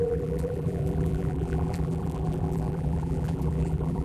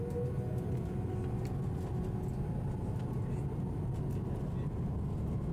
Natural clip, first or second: second